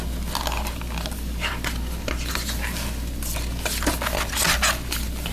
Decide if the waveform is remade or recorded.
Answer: recorded